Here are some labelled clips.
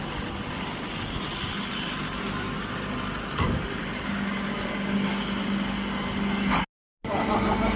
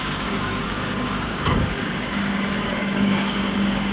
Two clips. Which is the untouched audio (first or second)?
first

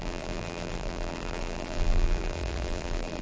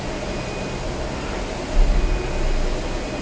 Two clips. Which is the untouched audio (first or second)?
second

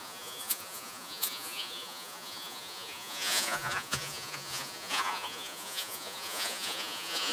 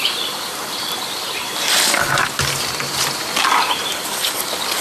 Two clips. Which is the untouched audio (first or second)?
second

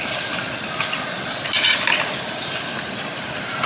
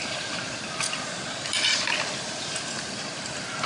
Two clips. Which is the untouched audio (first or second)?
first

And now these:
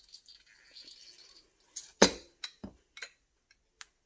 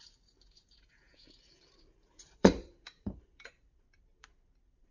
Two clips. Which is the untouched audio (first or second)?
first